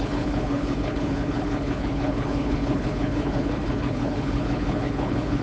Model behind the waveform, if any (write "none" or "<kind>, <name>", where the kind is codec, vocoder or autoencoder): codec, HILCodec